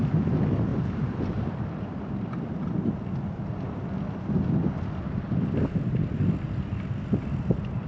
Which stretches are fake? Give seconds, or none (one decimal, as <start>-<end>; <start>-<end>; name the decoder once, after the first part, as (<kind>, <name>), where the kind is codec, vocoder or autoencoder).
0.7-2.5 (vocoder, BigVGAN v2)